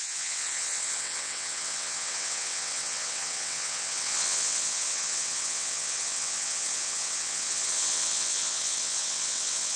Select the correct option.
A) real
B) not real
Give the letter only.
B